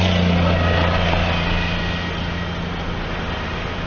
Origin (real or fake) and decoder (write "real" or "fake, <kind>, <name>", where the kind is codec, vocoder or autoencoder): real